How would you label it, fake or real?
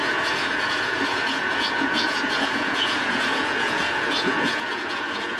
fake